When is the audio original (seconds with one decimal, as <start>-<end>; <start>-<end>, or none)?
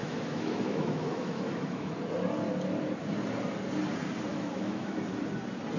1.9-4.3; 5.0-5.8